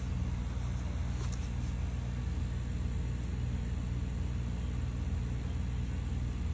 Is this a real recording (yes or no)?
yes